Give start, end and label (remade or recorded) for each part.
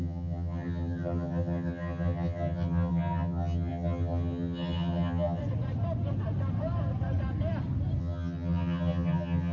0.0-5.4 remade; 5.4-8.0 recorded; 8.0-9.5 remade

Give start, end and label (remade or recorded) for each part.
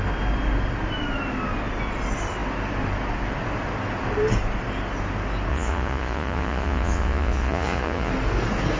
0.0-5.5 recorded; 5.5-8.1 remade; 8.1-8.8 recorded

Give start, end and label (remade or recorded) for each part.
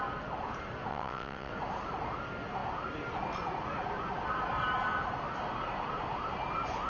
0.0-0.9 recorded; 0.9-1.5 remade; 1.5-6.9 recorded